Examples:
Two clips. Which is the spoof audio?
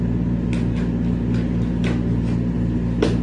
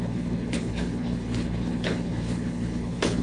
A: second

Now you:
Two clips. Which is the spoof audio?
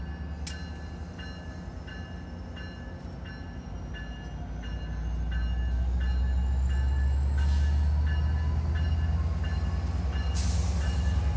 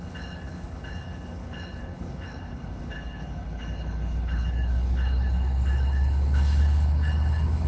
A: second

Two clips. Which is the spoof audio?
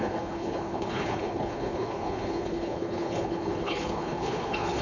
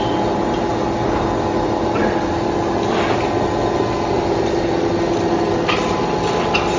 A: first